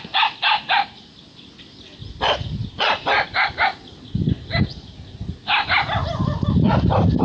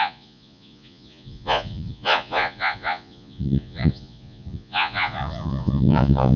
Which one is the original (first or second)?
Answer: first